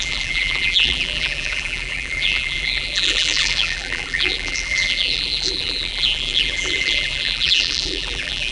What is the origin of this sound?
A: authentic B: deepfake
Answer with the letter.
B